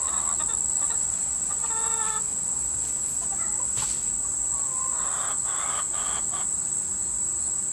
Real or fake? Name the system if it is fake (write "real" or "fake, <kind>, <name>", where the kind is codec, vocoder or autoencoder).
real